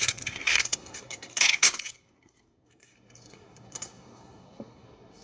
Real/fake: fake